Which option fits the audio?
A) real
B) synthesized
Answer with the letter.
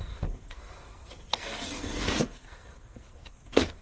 B